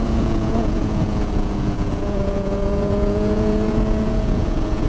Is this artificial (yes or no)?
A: yes